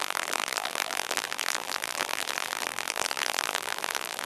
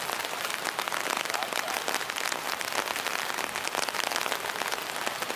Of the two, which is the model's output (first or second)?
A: first